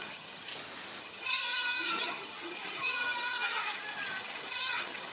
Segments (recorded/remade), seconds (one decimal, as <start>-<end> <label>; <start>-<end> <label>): 0.0-0.5 remade; 0.5-1.0 recorded; 1.0-5.1 remade